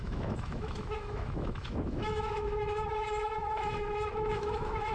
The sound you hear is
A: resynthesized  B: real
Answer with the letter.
A